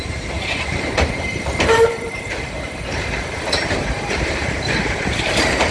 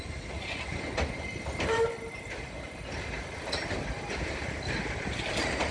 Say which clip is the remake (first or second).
first